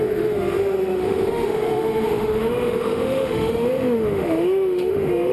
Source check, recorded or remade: remade